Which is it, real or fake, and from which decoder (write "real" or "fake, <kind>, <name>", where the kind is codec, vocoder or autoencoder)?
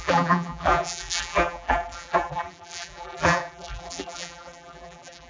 fake, vocoder, BigVGAN v2